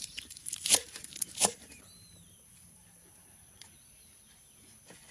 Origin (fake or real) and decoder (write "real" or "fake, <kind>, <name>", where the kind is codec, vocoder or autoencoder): fake, vocoder, BigVGAN v2